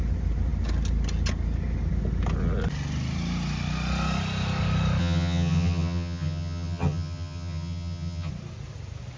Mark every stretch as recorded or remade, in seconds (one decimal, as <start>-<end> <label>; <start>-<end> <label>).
0.0-5.0 recorded; 5.0-8.3 remade; 8.3-9.2 recorded